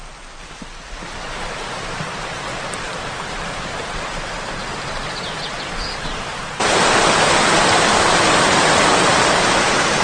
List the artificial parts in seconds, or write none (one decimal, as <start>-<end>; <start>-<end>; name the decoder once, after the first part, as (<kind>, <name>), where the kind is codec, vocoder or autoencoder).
1.0-6.6 (vocoder, BigVGAN v2); 7.6-10.0